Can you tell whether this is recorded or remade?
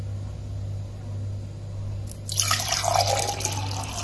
recorded